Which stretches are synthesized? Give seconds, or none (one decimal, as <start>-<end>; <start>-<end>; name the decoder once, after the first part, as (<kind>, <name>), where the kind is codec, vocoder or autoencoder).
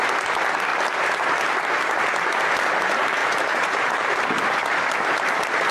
3.2-4.2 (vocoder, BigVGAN v2)